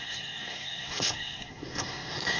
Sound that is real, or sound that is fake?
fake